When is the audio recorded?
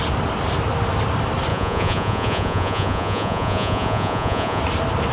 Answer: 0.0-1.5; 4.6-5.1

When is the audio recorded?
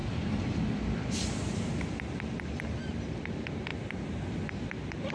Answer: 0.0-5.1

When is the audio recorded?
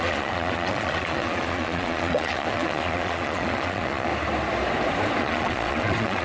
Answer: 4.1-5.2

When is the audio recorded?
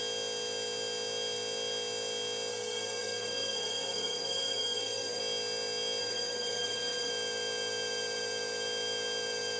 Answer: 0.0-2.5; 5.2-6.0; 7.1-9.6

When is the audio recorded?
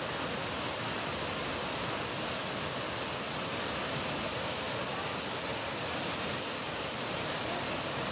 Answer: 0.0-8.1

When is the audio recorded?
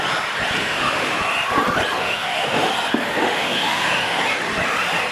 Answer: 0.0-0.6; 1.2-2.0; 2.7-3.1; 4.2-5.1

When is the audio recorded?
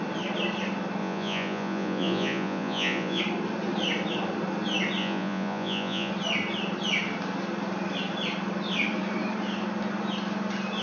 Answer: 0.0-1.0; 3.2-5.0; 6.1-10.8